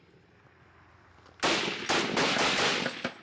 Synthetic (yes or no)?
no